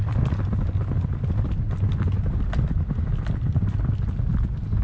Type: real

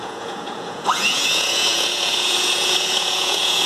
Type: fake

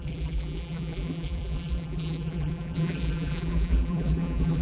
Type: fake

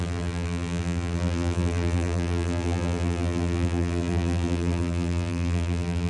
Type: fake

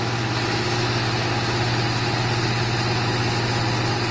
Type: real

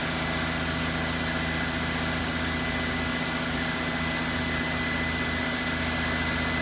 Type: real